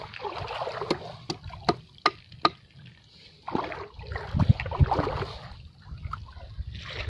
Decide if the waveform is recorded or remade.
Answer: recorded